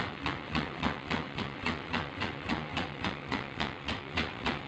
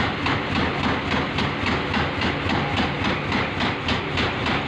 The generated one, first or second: first